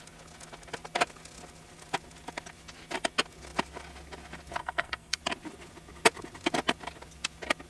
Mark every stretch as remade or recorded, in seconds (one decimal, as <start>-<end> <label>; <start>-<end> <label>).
0.0-4.6 recorded; 4.6-5.2 remade; 5.2-7.7 recorded